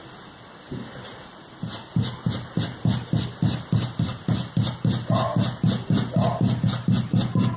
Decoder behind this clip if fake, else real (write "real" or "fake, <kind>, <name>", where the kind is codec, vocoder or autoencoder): real